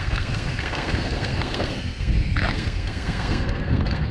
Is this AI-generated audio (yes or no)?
yes